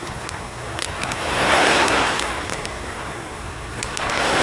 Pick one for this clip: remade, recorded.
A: remade